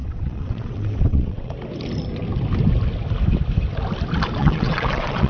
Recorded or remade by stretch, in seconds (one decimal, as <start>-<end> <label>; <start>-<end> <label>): 0.0-1.5 remade; 1.5-4.4 recorded; 4.4-5.3 remade